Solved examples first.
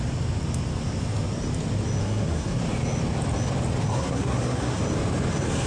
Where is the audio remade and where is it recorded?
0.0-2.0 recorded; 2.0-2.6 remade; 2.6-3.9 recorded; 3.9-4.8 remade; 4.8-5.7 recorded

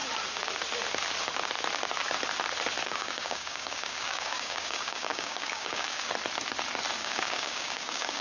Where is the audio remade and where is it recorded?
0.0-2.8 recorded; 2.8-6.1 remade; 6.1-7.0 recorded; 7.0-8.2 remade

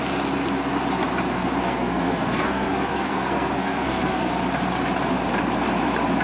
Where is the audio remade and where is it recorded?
0.0-1.6 recorded; 1.6-4.3 remade; 4.3-6.2 recorded

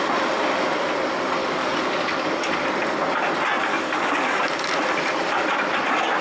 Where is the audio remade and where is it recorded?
0.0-1.4 recorded; 1.4-2.5 remade; 2.5-3.7 recorded; 3.7-4.4 remade; 4.4-6.2 recorded

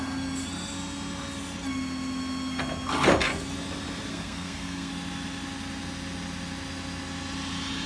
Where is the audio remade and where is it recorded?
0.0-4.1 recorded; 4.1-4.9 remade; 4.9-7.9 recorded

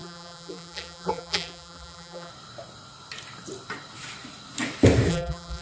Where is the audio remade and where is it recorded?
0.0-2.3 remade; 2.3-5.1 recorded; 5.1-5.6 remade